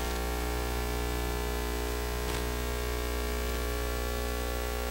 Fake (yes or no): no